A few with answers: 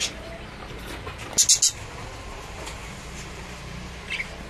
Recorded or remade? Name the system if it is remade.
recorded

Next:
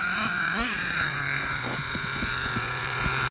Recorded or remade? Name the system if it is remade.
remade, vocoder, Vocos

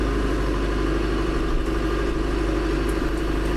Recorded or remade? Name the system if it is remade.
recorded